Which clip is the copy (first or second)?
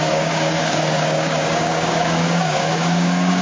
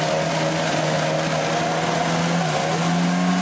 first